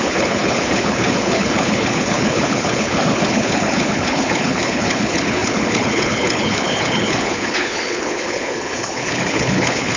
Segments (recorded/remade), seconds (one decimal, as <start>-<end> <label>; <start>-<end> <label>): 0.0-10.0 remade